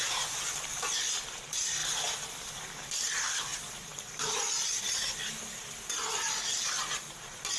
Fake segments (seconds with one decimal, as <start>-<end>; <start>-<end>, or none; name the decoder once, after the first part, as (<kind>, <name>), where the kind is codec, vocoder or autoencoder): none